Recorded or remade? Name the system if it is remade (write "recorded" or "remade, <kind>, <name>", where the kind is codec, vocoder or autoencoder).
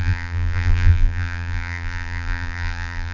remade, vocoder, BigVGAN v2